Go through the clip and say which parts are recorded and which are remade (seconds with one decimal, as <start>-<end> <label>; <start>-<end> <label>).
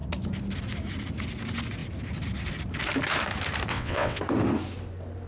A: 0.0-3.7 recorded; 3.7-4.2 remade; 4.2-5.3 recorded